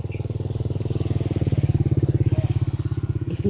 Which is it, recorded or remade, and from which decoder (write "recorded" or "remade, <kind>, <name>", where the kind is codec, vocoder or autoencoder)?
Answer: remade, codec, DAC